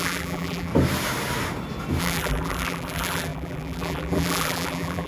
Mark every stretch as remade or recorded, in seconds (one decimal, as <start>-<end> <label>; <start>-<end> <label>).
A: 0.0-0.7 remade; 0.7-2.0 recorded; 2.0-5.1 remade